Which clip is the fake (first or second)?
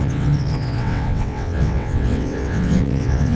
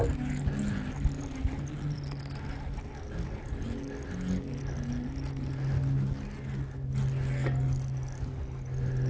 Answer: first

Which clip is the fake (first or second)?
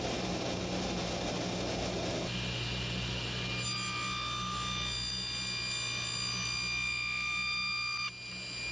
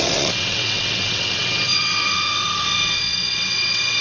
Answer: second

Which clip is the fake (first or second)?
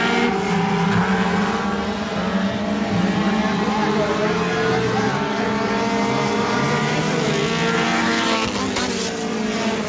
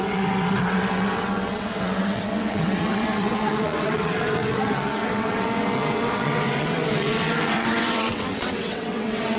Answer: second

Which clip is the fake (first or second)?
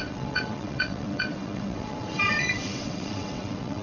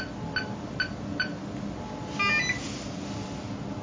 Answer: first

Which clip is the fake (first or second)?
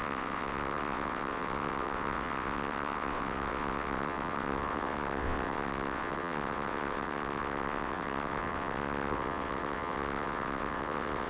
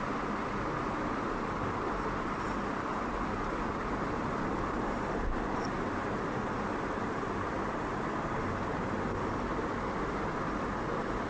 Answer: first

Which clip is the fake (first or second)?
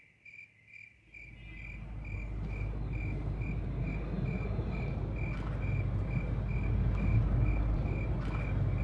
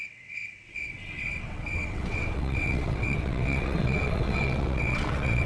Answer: second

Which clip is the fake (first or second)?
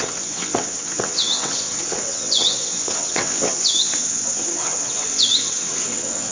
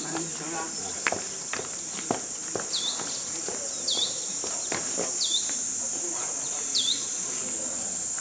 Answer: first